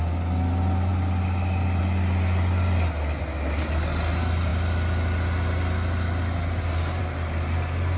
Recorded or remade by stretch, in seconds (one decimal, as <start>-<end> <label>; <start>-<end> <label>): 0.0-8.0 recorded